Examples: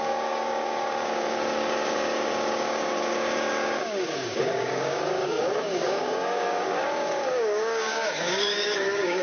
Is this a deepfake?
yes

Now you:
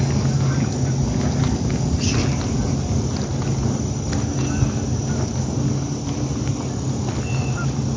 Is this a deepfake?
no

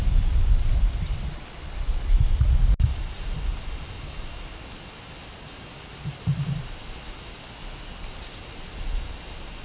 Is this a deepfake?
no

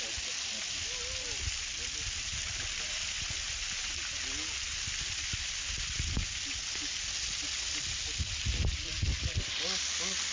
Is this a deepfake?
no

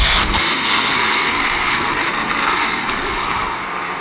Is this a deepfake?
yes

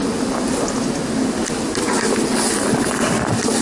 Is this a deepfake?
no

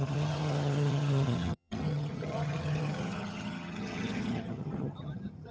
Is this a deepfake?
yes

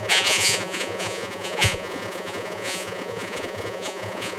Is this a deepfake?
yes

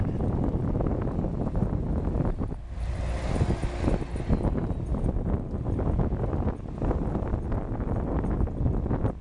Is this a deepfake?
no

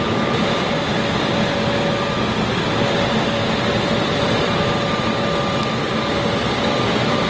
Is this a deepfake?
no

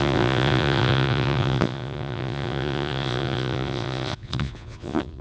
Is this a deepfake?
yes